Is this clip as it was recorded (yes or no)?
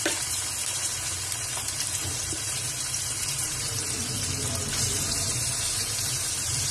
no